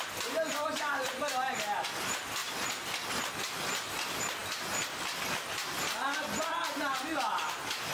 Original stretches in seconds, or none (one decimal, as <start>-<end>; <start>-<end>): 0.0-7.9